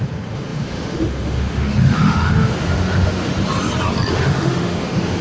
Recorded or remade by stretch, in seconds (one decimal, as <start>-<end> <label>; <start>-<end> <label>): 0.0-3.3 remade; 3.3-4.1 recorded; 4.1-5.2 remade